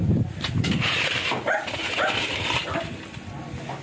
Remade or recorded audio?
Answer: recorded